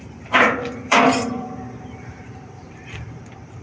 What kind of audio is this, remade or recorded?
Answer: remade